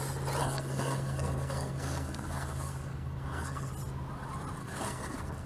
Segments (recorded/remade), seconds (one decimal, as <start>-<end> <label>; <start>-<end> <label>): 0.0-0.4 recorded; 0.4-3.7 remade; 3.7-4.6 recorded; 4.6-5.5 remade